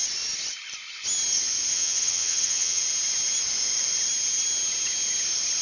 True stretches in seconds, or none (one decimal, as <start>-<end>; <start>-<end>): 0.0-1.7; 2.8-5.6